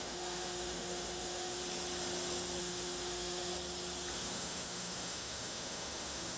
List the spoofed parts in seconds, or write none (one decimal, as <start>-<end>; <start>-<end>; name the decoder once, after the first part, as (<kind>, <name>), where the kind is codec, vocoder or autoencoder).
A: 0.0-1.6 (autoencoder, DAC-VAE); 2.6-3.5; 4.1-6.4